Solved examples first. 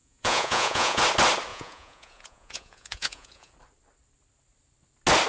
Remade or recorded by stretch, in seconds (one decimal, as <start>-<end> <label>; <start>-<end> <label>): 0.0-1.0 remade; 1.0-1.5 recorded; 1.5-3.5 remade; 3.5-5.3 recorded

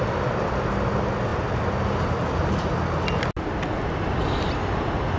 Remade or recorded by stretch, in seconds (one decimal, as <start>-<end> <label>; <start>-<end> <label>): 0.0-5.2 recorded

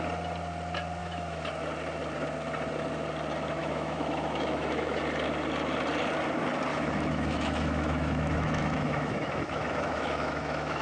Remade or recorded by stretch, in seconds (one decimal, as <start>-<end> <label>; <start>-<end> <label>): 0.0-1.0 recorded; 1.0-1.5 remade; 1.5-3.6 recorded; 3.6-5.0 remade; 5.0-6.7 recorded; 6.7-10.8 remade